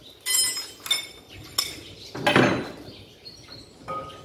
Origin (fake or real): real